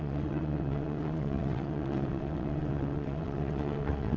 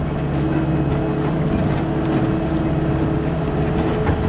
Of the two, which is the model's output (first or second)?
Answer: first